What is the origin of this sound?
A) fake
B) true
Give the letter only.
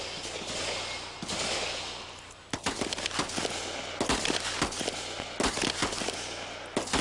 B